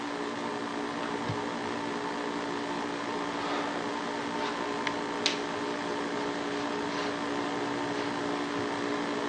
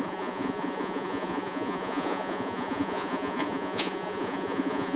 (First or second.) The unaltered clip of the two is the first